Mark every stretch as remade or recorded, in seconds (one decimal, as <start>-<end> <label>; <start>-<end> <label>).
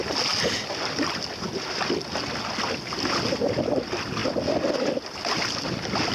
0.0-6.1 recorded